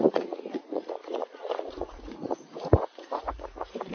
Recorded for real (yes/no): no